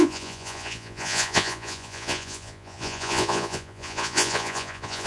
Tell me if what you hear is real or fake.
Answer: fake